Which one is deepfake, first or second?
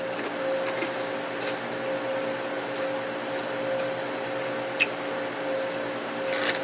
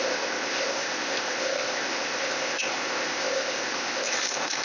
second